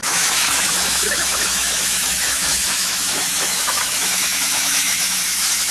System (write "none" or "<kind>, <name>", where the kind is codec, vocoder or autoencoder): autoencoder, DAC-VAE